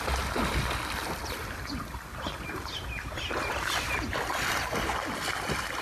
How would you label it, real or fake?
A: real